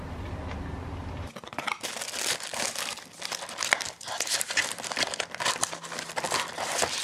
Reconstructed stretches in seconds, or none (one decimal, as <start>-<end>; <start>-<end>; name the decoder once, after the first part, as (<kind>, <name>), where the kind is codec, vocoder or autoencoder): 2.5-5.4 (vocoder, BigVGAN v2)